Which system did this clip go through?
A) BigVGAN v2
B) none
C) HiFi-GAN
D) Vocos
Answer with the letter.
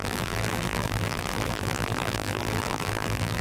A